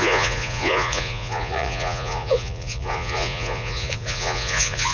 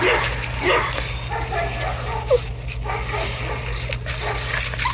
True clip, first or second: second